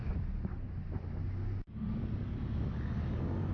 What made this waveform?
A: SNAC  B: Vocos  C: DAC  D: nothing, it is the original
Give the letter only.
D